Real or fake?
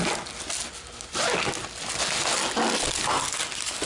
real